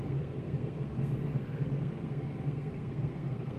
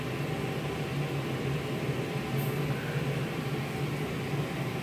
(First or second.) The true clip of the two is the second